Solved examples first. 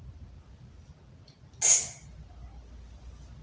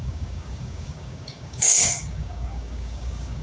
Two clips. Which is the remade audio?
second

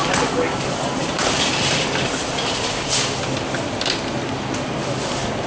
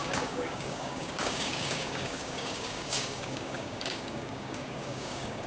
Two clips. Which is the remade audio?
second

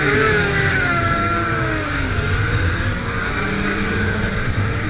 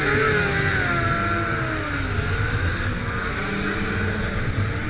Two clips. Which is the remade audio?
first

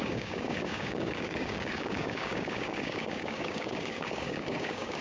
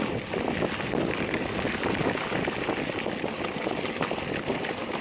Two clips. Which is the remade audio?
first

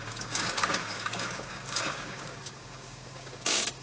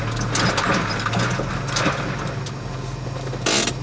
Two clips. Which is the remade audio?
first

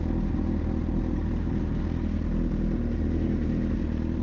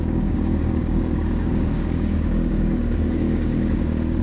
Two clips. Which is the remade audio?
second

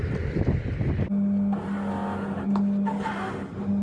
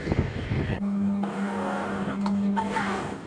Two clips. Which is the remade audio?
second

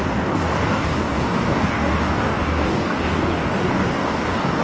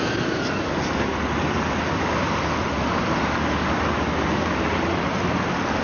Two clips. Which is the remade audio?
first